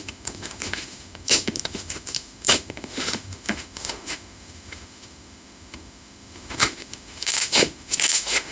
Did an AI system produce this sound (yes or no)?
yes